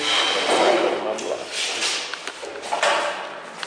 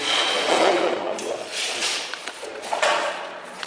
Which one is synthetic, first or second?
second